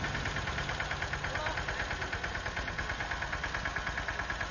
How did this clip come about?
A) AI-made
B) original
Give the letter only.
B